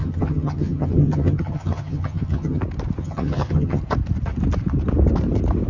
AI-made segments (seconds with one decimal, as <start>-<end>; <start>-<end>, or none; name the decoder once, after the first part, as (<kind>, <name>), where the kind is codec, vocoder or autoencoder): 0.0-2.6 (vocoder, HiFi-GAN); 3.0-3.8